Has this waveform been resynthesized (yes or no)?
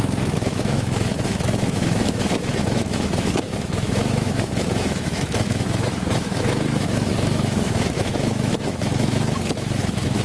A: yes